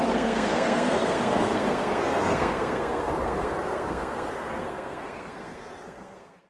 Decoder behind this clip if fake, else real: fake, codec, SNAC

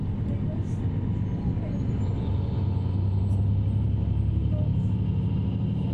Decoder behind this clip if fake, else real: real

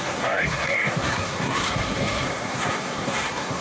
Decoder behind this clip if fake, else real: fake, codec, SNAC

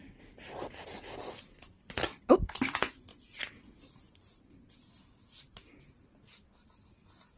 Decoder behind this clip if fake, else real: real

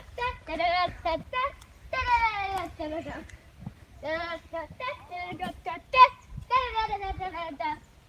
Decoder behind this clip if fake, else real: real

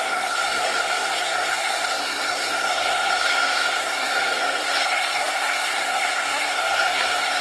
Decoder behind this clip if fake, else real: fake, codec, SNAC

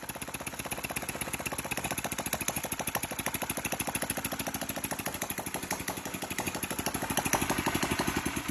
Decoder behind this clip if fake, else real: real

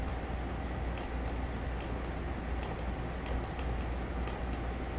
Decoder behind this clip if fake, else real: real